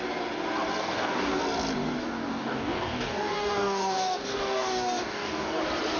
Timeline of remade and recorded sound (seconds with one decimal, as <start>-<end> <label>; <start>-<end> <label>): 0.0-0.8 recorded; 0.8-1.4 remade; 1.4-2.0 recorded; 2.0-5.6 remade; 5.6-6.0 recorded